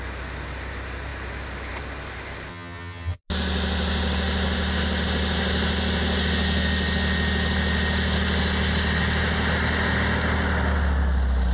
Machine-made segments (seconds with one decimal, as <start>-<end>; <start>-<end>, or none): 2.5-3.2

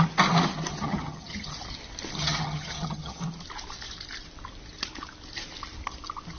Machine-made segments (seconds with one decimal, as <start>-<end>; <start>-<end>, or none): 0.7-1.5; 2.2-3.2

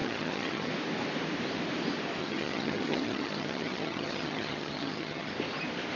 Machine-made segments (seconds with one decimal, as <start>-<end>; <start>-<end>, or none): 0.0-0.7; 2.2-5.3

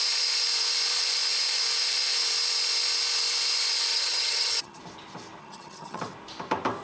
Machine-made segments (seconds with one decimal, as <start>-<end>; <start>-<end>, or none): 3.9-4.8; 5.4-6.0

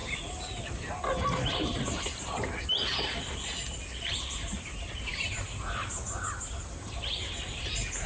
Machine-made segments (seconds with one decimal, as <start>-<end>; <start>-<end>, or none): none

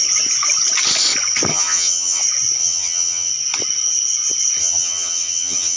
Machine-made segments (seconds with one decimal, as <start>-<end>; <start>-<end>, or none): 1.5-2.2; 2.6-3.3; 4.6-5.8